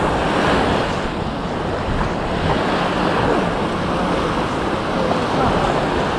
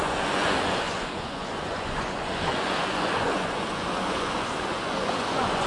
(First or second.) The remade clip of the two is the second